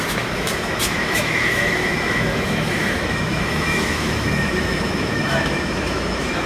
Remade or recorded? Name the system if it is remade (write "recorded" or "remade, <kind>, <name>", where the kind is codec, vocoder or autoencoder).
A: remade, autoencoder, DAC-VAE